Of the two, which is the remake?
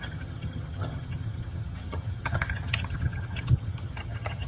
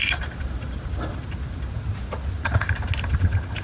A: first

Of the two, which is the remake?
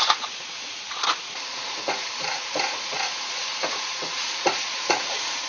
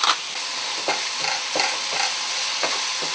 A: first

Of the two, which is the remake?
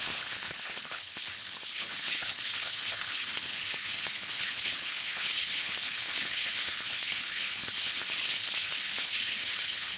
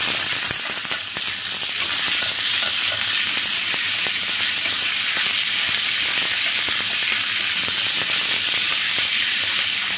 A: first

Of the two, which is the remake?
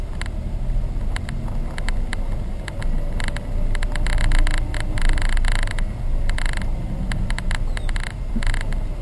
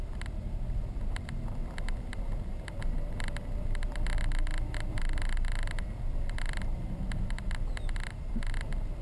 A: second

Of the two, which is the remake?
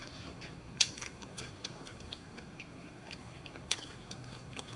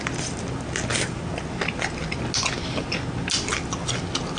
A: first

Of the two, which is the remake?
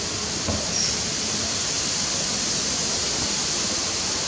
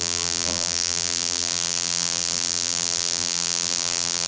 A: second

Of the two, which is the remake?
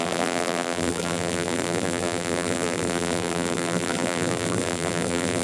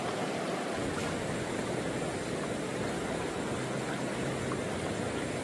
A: first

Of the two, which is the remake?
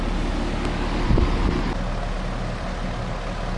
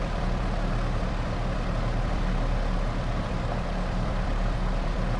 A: second